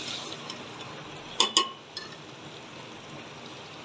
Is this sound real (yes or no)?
yes